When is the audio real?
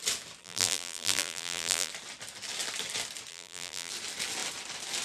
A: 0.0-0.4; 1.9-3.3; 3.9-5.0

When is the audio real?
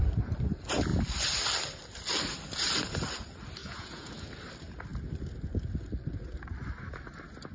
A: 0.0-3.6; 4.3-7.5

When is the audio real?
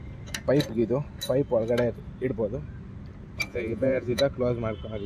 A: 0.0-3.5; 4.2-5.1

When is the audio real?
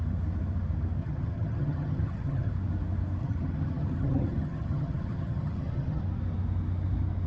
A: 0.0-1.0; 2.5-3.2; 6.0-7.3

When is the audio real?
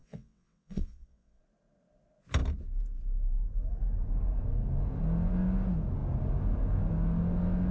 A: 1.4-7.7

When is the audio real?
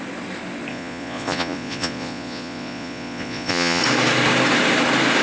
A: 0.0-0.7; 3.8-5.2